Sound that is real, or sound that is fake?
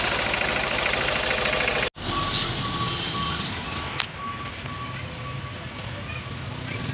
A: real